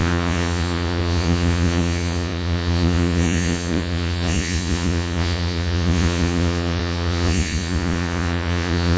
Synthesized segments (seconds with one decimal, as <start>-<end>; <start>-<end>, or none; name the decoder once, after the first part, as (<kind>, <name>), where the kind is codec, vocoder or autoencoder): 0.0-9.0 (vocoder, Vocos)